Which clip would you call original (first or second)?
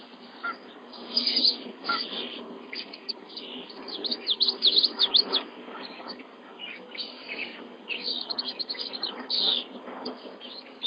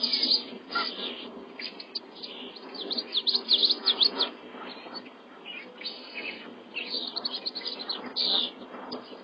second